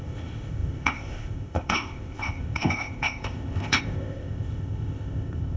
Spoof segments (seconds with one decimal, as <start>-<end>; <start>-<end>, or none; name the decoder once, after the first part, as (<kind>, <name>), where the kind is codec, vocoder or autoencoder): 0.0-5.6 (codec, ZipCodec)